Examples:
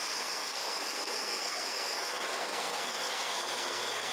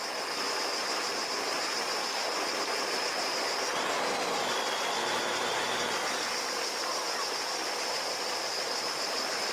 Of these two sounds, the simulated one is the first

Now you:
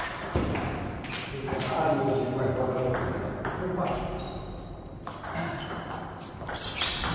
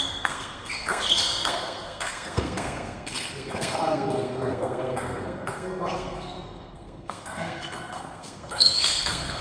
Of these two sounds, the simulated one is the second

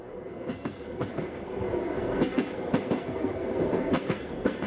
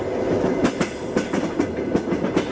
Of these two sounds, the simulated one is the first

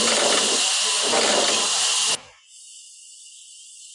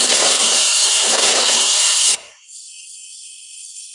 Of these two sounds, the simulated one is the second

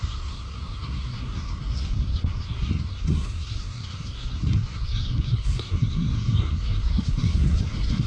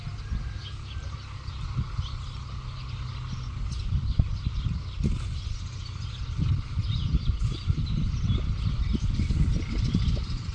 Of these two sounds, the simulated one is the first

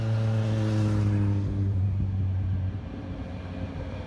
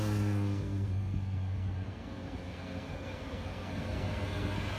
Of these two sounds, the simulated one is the second